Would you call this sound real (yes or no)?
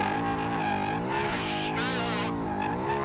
yes